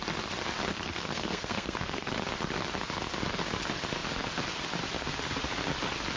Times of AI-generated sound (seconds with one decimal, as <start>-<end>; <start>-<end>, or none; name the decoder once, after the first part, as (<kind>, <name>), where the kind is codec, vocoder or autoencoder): 0.7-2.1 (codec, SNAC)